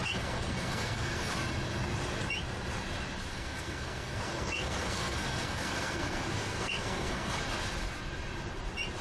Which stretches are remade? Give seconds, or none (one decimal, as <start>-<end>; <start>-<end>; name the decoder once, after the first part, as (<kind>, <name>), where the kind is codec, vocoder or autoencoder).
0.0-1.3 (codec, SNAC); 3.3-7.4